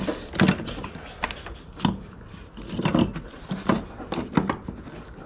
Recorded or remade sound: recorded